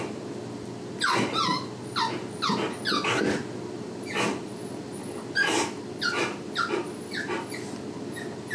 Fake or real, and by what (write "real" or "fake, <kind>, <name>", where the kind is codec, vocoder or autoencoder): real